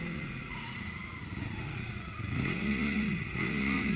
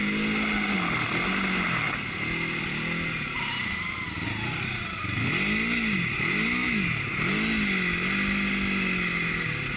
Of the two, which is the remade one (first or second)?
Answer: first